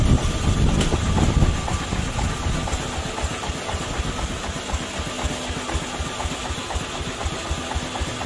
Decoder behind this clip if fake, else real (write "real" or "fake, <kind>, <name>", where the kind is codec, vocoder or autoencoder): real